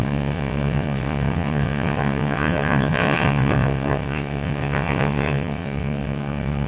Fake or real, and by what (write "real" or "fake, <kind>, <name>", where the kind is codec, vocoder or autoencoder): fake, vocoder, WaveNeXt